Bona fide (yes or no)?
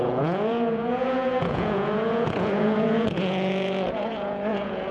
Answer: no